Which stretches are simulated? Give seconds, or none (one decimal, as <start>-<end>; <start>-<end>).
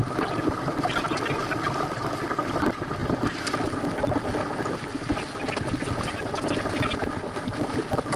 none